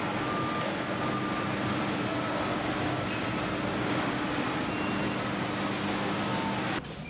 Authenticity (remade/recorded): recorded